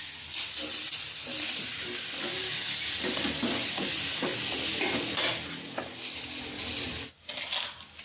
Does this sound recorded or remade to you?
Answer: recorded